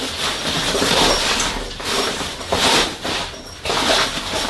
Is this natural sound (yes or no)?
yes